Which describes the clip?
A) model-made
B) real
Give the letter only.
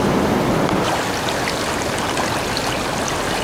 B